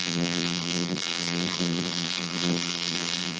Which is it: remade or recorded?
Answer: remade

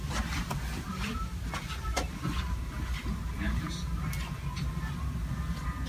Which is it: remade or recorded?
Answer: recorded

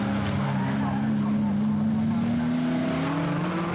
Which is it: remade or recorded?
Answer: recorded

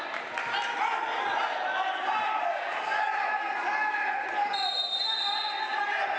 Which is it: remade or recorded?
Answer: recorded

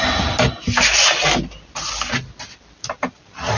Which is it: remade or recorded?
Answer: recorded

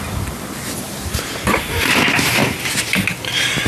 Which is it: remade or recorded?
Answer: recorded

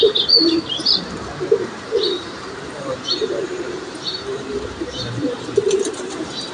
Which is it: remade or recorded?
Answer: remade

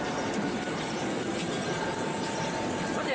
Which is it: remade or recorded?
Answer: remade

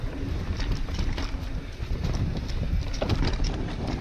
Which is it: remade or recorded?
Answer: remade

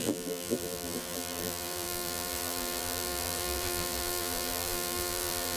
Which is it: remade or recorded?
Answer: remade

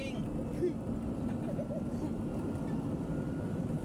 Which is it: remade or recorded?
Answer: remade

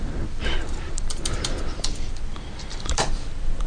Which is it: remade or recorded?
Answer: remade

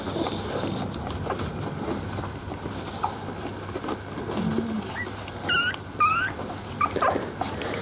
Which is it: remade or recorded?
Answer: recorded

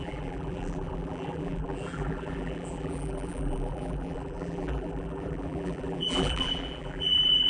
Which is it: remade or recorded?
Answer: remade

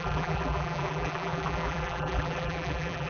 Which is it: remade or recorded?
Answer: remade